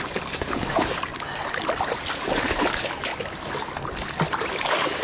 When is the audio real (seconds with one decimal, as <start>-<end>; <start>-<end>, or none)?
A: 1.1-2.2; 3.1-4.5